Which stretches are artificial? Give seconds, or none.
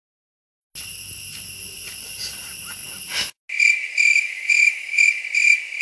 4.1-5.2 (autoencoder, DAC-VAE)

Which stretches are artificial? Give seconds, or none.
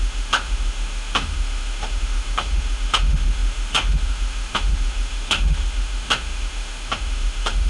0.0-7.7 (autoencoder, DAC-VAE)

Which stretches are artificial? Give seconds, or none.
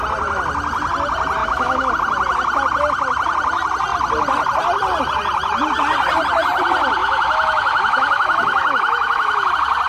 1.4-1.9 (autoencoder, DAC-VAE); 7.0-9.5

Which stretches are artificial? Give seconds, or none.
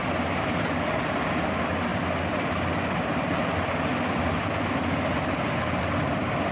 none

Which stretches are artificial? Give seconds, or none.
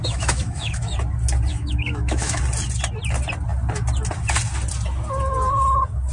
0.0-0.9 (autoencoder, DAC-VAE); 1.5-2.4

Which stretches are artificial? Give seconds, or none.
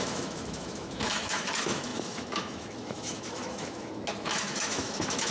0.0-5.3 (autoencoder, DAC-VAE)